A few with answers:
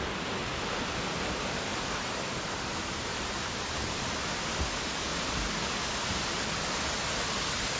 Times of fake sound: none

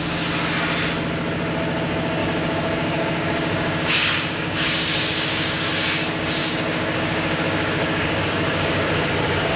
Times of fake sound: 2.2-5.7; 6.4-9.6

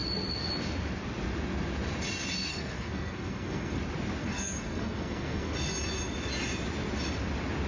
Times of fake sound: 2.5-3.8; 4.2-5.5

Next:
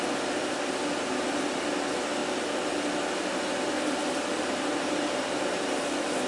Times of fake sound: 4.0-5.8

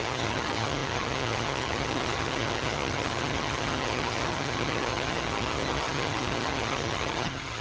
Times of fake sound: 0.0-7.6

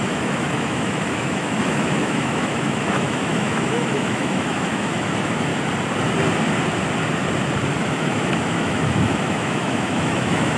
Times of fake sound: 0.0-5.5; 7.9-10.6

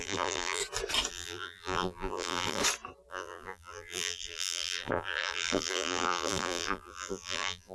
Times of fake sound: 0.0-0.6; 1.1-2.6; 3.1-7.7

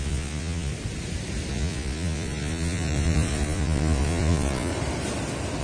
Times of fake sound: 0.0-0.7; 1.5-4.7